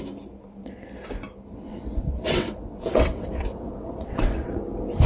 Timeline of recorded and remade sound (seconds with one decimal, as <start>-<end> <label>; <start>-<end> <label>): 0.0-1.5 recorded; 1.5-4.6 remade; 4.6-5.1 recorded